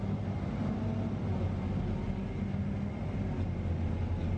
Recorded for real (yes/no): yes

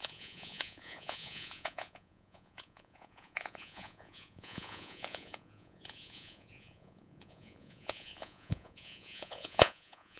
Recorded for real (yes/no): no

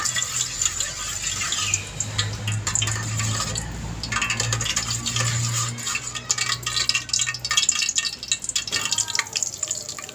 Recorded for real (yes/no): yes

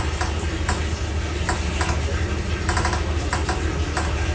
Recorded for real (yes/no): yes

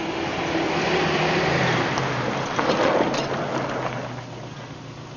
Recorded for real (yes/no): yes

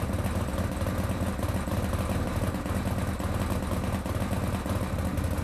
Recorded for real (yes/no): yes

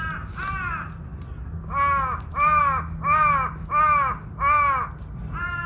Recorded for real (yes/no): yes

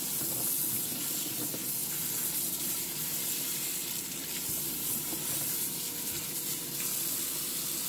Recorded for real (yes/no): yes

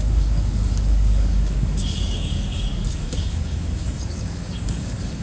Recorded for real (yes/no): no